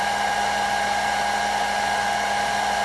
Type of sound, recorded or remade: recorded